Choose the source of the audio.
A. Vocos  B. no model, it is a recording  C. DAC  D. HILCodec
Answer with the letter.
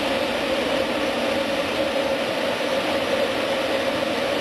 B